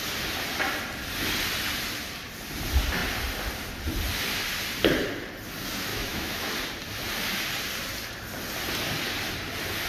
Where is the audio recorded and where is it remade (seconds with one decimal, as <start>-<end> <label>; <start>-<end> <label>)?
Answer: 0.0-5.9 recorded; 5.9-6.5 remade; 6.5-9.9 recorded